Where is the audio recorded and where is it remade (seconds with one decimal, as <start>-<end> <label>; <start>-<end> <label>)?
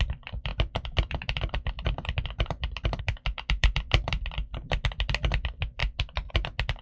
0.0-5.8 remade; 5.8-6.3 recorded; 6.3-6.8 remade